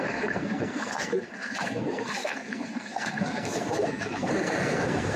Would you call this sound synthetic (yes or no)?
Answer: yes